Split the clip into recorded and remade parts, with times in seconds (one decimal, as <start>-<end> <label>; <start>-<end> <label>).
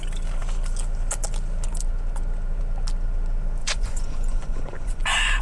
0.0-3.6 recorded; 3.6-5.4 remade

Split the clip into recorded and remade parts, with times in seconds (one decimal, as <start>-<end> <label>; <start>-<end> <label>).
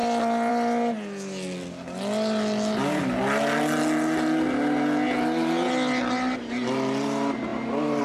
0.0-8.0 recorded